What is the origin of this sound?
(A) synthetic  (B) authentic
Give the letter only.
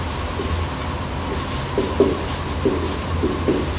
B